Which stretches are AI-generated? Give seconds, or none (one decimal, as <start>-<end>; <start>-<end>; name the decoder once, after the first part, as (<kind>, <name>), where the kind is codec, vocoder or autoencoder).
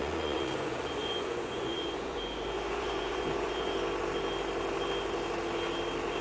0.0-3.7 (vocoder, Vocos)